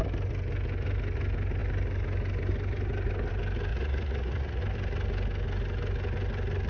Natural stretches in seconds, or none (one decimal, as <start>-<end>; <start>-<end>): 0.0-3.7; 4.6-6.7